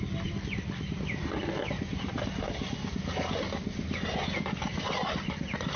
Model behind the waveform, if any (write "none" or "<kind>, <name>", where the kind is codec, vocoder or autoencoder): none